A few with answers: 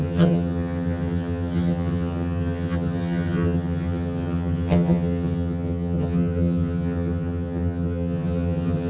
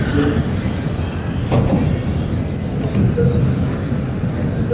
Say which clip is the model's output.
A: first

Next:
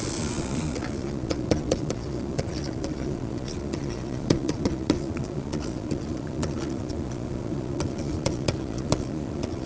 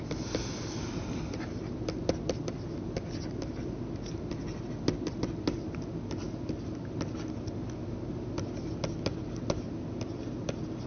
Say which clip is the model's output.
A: first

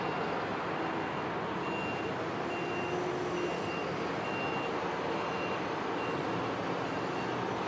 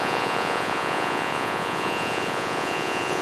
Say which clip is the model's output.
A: second